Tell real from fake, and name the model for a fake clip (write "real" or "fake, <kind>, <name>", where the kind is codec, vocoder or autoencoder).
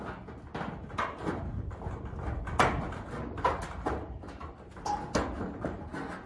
real